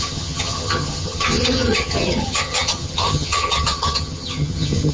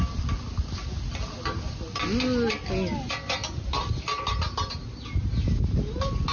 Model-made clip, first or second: first